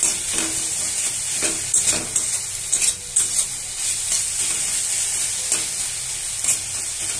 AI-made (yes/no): no